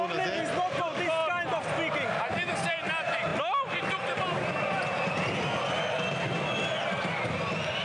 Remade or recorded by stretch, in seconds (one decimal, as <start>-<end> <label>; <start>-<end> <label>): 0.0-7.8 recorded